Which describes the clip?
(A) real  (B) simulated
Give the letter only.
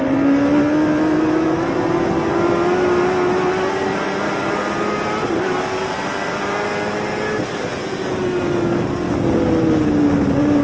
A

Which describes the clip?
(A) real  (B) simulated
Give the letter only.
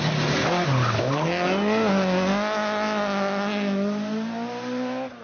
A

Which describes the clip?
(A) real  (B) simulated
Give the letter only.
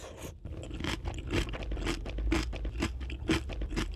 A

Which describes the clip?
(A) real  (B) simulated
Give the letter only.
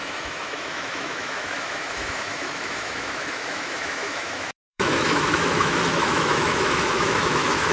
B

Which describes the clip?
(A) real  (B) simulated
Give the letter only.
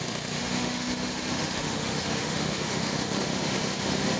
B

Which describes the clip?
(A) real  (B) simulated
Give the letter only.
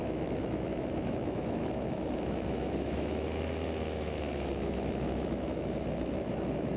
B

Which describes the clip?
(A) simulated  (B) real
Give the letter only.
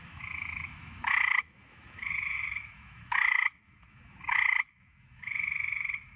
A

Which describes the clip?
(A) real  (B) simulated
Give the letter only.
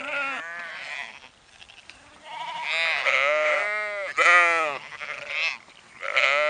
A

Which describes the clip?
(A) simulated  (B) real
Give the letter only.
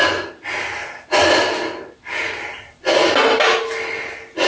B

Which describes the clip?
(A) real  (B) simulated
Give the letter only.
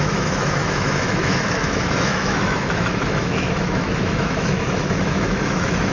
B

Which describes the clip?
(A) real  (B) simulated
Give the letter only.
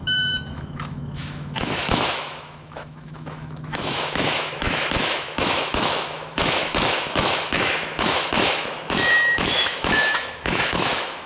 B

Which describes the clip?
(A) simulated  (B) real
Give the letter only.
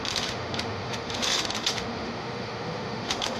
A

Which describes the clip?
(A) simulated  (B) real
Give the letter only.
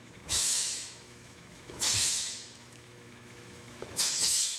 A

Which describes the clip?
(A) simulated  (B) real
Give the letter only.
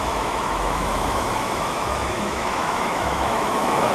A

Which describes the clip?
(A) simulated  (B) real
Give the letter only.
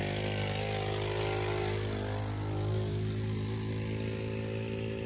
B